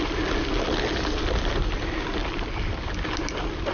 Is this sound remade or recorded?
recorded